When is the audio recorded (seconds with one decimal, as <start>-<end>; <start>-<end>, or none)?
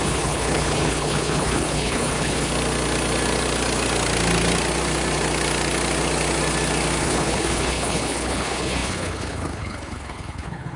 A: 2.5-7.0